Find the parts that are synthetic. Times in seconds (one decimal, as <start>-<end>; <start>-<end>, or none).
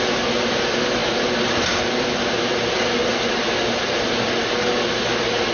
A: none